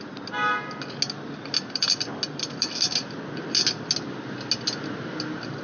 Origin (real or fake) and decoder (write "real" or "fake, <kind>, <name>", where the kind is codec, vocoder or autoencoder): real